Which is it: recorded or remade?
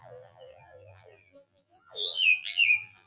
remade